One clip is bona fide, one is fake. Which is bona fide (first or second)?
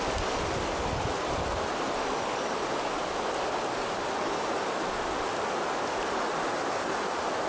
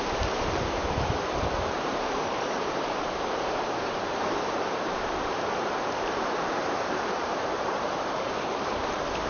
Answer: first